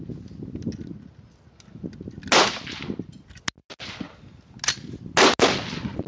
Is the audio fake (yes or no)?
no